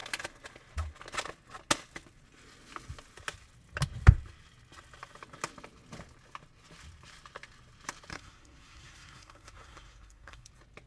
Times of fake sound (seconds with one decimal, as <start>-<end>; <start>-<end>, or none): 8.1-10.5